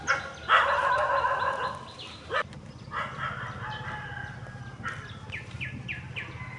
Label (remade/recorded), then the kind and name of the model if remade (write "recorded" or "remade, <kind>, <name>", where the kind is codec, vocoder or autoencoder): recorded